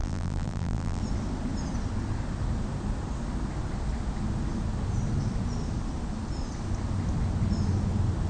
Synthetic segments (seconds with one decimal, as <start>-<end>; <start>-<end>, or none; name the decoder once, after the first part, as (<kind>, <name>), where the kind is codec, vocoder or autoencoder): 0.0-1.0 (vocoder, BigVGAN v2)